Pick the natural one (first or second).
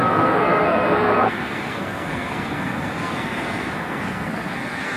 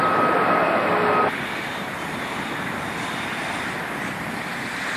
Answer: second